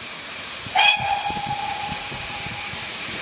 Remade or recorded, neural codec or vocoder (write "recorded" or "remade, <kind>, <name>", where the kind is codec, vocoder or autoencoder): remade, vocoder, Vocos